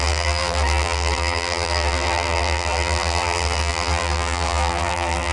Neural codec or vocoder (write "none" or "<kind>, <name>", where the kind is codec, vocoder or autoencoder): vocoder, BigVGAN v2